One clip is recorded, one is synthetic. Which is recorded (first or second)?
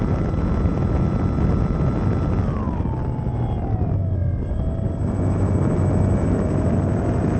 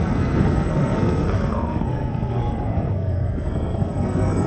first